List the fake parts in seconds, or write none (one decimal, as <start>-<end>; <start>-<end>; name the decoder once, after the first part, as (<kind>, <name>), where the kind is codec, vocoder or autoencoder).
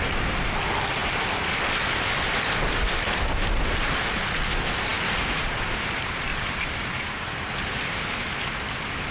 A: 6.3-7.5 (vocoder, BigVGAN v2)